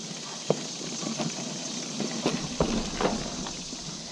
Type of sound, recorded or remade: recorded